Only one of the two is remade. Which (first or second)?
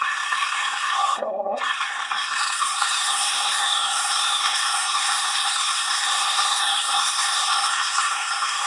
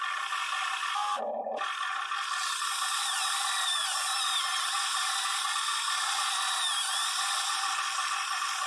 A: first